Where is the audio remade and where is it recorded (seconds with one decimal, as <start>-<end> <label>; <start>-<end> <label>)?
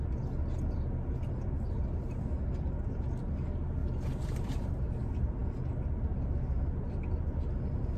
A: 0.0-3.8 recorded; 3.8-4.7 remade; 4.7-8.0 recorded